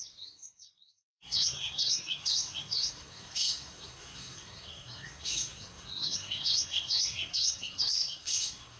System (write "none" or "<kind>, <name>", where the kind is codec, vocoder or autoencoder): codec, SNAC